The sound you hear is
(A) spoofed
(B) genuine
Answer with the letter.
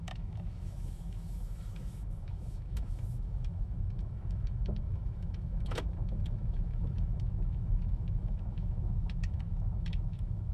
A